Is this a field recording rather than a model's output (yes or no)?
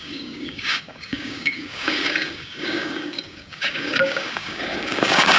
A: no